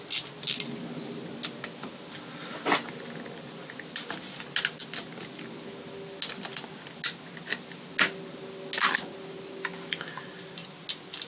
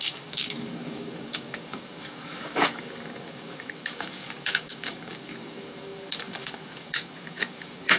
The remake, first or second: second